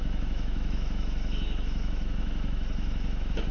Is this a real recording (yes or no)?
no